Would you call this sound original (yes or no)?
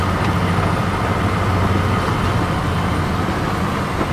yes